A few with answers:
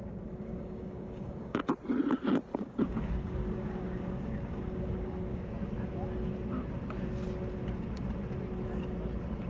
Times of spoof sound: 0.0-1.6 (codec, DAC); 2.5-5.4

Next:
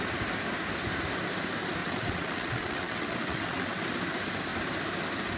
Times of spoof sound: 1.8-3.8 (vocoder, WaveNeXt)